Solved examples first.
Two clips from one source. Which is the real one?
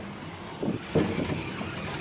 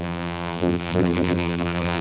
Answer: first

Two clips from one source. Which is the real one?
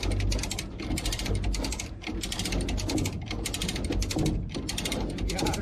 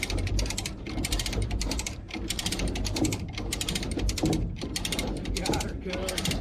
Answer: first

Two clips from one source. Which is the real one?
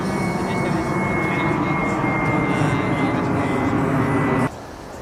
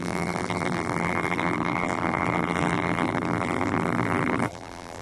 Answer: first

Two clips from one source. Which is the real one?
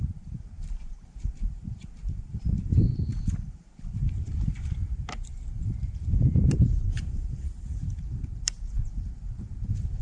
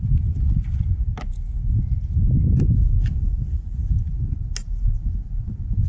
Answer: second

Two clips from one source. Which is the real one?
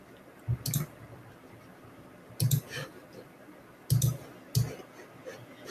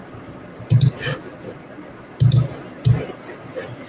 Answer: first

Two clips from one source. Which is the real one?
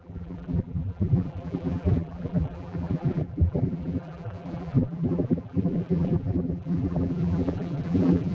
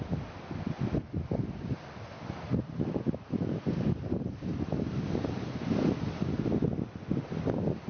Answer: second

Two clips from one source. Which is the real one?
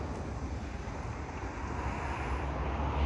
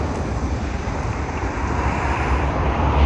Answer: first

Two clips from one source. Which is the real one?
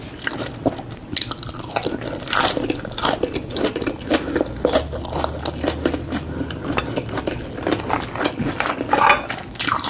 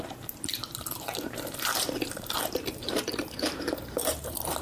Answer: first